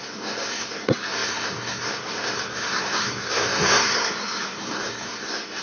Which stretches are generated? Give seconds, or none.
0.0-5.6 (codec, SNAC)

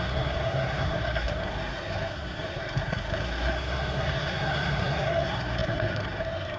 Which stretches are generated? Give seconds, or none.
0.0-6.6 (codec, SNAC)

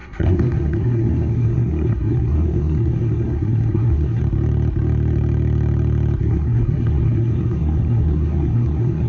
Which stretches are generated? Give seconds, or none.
0.0-4.2 (codec, SNAC); 6.2-9.1